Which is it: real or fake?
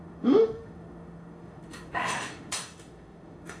fake